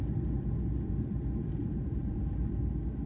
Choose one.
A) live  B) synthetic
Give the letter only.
A